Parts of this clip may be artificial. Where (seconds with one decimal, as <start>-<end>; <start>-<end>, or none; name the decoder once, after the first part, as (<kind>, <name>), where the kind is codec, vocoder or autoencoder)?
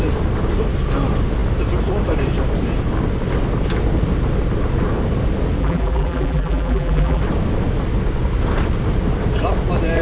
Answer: 5.6-7.2 (vocoder, BigVGAN v2)